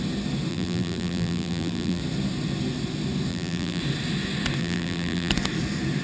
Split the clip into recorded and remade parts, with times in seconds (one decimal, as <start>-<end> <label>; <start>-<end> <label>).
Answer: 0.0-0.5 recorded; 0.5-2.0 remade; 2.0-3.3 recorded; 3.3-3.8 remade; 3.8-4.6 recorded; 4.6-5.3 remade; 5.3-6.0 recorded